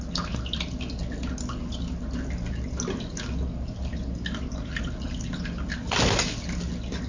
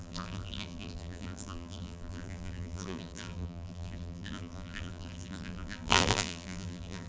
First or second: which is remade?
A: second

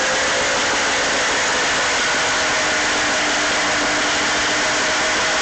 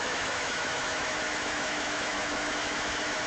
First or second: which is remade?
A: second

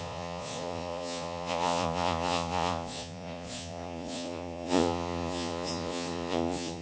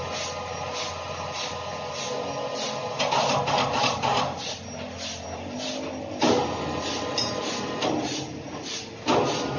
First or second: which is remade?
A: first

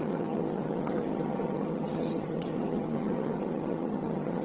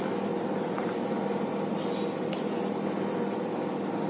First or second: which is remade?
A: first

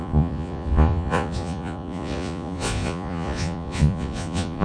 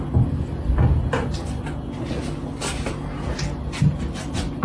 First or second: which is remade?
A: first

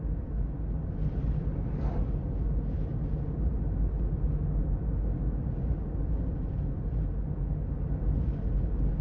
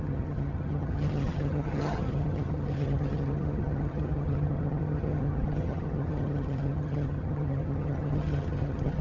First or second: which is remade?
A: second